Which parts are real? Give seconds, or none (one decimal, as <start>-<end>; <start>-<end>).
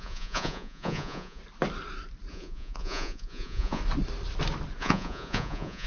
1.4-2.3; 3.8-4.8